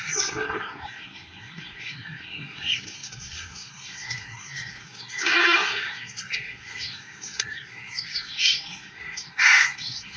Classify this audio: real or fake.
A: fake